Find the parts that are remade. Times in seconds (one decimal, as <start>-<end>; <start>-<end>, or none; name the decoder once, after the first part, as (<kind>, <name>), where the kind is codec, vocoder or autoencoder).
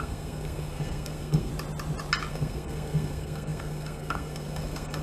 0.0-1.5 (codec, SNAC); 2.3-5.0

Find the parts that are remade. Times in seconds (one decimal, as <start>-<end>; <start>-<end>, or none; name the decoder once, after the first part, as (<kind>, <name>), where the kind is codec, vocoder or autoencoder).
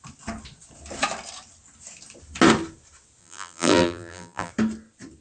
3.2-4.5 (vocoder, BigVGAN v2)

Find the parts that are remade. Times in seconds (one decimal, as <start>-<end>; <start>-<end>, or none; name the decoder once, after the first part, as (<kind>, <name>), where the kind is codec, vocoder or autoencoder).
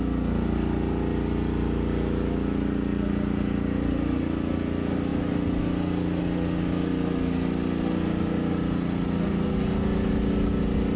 none